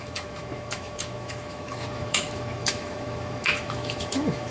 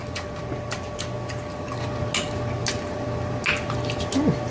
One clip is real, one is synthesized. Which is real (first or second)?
second